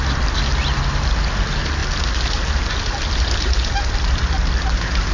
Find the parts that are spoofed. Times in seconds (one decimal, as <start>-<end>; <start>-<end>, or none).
none